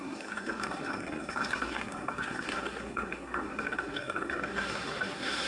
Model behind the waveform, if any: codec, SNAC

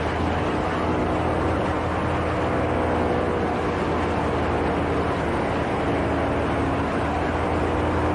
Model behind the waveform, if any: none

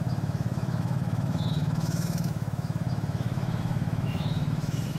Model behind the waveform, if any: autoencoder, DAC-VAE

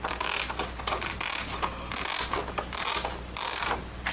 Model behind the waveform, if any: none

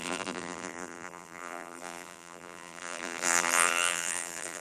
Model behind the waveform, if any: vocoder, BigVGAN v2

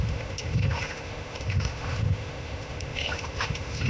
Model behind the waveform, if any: autoencoder, DAC-VAE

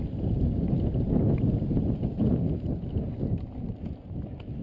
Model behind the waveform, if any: none